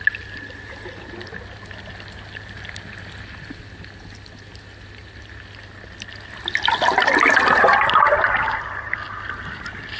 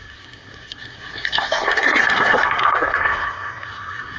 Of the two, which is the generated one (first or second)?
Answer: second